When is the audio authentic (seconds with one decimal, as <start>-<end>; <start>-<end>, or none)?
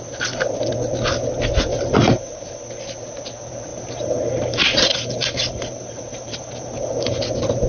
0.0-1.7; 2.6-3.7; 7.2-7.7